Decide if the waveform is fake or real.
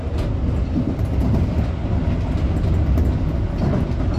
real